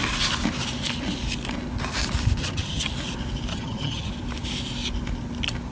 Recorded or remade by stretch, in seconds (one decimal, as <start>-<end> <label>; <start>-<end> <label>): 0.0-2.4 recorded; 2.4-2.9 remade; 2.9-3.5 recorded; 3.5-4.1 remade; 4.1-5.7 recorded

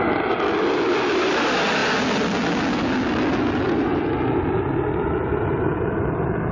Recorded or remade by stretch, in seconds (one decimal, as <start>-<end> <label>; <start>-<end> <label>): 0.0-6.5 recorded